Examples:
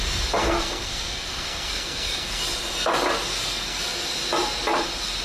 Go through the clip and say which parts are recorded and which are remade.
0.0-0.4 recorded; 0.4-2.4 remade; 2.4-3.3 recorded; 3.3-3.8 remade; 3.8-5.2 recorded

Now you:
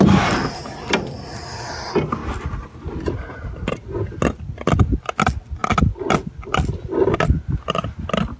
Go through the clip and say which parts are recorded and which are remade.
0.0-8.4 recorded

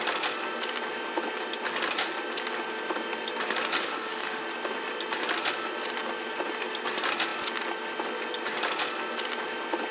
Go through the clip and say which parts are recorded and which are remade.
0.0-3.8 recorded; 3.8-4.4 remade; 4.4-9.9 recorded

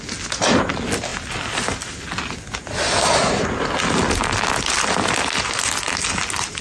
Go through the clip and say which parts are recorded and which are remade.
0.0-6.6 recorded

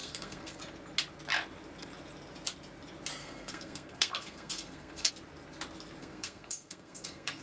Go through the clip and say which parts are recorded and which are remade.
0.0-0.6 remade; 0.6-3.2 recorded; 3.2-5.1 remade; 5.1-6.0 recorded; 6.0-7.4 remade

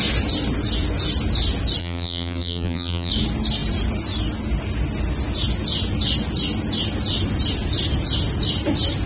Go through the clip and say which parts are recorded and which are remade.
0.0-1.8 recorded; 1.8-3.1 remade; 3.1-9.1 recorded

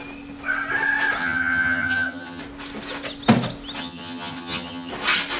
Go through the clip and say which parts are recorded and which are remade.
0.0-1.2 recorded; 1.2-2.4 remade; 2.4-3.8 recorded; 3.8-4.9 remade; 4.9-5.4 recorded